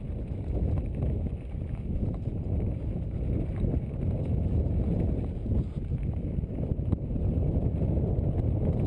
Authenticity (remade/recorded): recorded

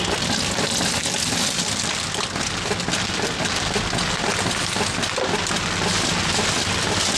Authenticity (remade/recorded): recorded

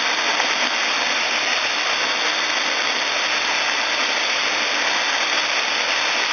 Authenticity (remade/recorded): recorded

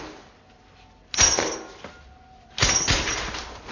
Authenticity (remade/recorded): recorded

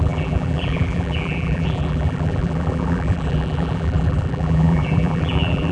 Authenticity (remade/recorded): remade